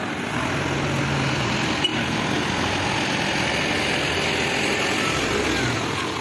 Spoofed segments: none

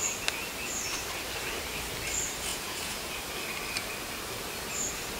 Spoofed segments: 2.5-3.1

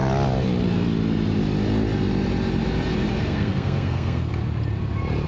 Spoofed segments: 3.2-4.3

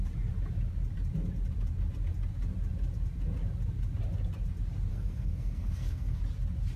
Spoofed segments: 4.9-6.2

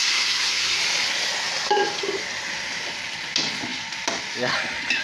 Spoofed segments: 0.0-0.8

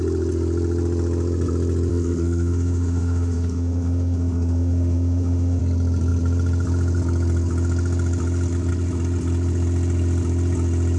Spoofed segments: 1.9-5.6

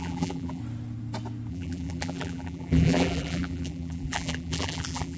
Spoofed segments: 0.0-0.6; 1.5-5.2